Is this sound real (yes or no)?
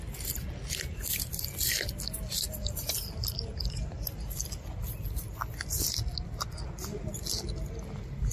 yes